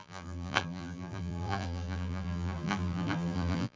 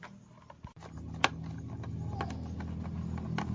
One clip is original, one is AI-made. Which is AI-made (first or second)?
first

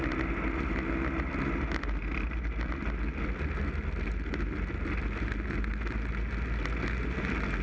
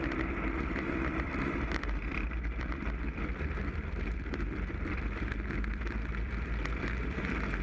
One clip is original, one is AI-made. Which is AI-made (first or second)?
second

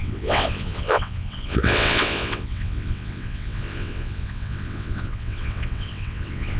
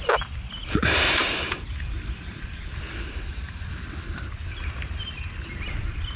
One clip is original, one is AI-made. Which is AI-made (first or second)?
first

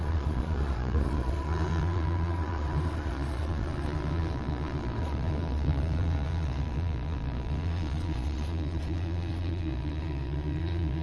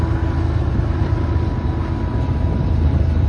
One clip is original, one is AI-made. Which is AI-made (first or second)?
first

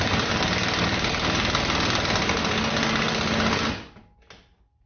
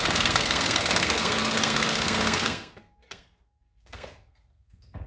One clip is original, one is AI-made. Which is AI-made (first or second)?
second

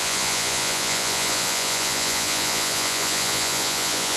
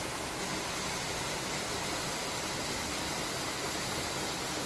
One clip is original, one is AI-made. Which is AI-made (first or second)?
first